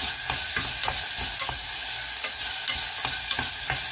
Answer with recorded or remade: recorded